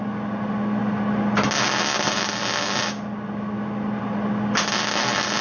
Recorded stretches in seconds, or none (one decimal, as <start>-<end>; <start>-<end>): 0.0-5.4